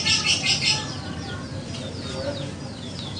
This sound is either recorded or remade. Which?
recorded